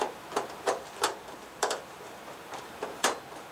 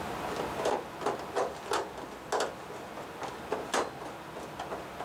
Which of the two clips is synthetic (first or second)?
first